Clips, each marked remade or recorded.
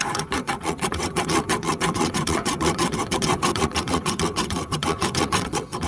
remade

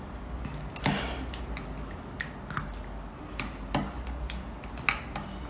recorded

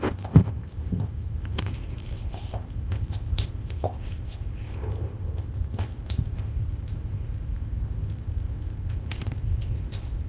remade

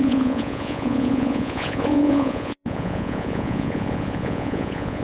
remade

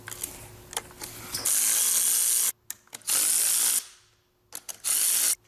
recorded